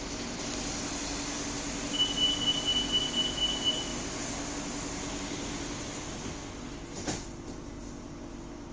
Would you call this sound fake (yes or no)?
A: no